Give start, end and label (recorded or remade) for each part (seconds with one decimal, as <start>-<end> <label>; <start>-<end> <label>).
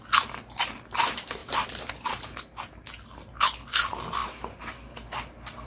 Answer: 0.0-1.4 recorded; 1.4-1.9 remade; 1.9-5.7 recorded